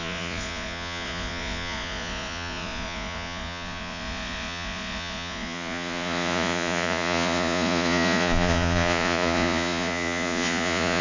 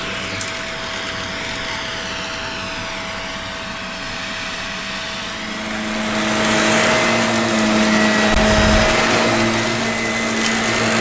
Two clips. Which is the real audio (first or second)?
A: second